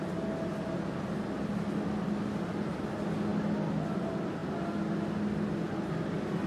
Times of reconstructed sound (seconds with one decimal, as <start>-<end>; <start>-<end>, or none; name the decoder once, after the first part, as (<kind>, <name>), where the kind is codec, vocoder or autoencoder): none